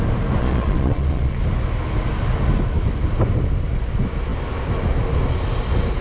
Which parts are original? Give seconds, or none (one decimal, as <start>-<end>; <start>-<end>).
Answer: 0.0-0.4; 1.4-6.0